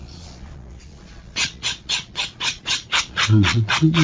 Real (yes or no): no